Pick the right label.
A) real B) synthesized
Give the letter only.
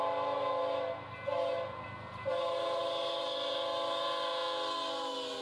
A